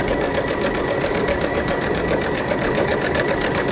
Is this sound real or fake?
fake